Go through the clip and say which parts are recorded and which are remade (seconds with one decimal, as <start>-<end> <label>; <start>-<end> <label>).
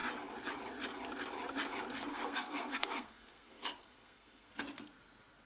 0.0-2.1 recorded; 2.1-4.5 remade; 4.5-5.5 recorded